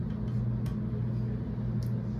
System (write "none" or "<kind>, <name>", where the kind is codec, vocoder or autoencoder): none